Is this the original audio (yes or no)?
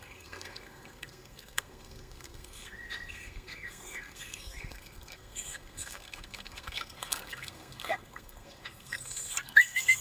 no